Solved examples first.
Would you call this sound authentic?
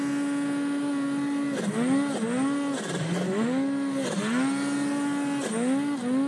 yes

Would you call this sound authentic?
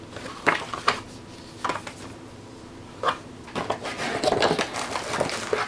yes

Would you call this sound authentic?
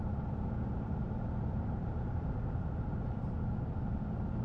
no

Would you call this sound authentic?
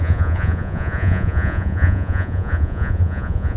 no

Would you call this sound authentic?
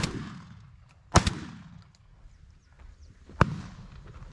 yes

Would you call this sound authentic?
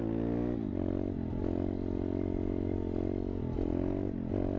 yes